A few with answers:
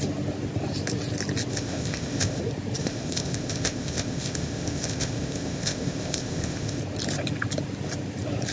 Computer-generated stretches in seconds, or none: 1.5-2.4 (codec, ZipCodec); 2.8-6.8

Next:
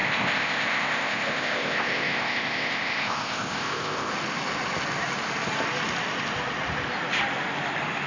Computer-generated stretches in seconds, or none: 0.0-4.1 (codec, ZipCodec)